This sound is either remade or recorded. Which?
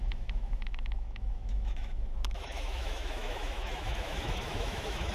remade